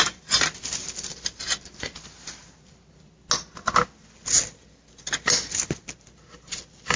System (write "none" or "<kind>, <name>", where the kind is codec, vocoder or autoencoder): none